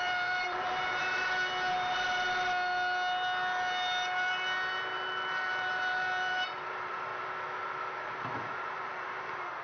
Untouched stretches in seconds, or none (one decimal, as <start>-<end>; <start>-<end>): 1.0-5.3; 7.1-8.0